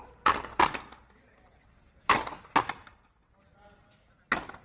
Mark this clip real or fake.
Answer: real